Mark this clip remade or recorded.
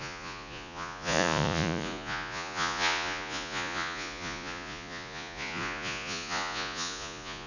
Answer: remade